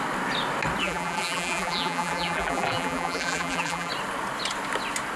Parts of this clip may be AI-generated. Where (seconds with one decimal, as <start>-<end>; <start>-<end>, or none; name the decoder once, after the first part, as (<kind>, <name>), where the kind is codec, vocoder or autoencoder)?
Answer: 0.8-3.9 (vocoder, BigVGAN v2)